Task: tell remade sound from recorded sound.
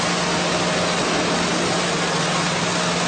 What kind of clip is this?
recorded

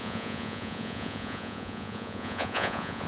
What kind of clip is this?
remade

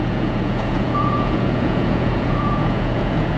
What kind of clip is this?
remade